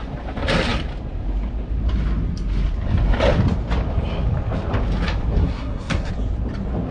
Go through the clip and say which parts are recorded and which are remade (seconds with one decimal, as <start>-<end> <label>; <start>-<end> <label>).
0.0-5.4 recorded; 5.4-6.1 remade; 6.1-6.9 recorded